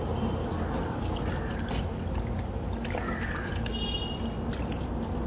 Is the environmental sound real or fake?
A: real